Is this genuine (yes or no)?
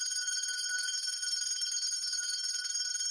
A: yes